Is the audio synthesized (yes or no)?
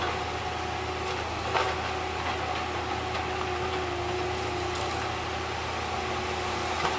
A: no